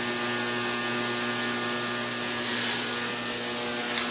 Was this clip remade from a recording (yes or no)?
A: no